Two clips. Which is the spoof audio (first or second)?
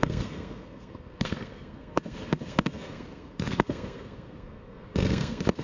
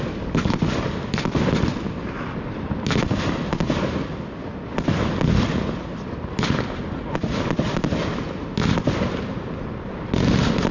first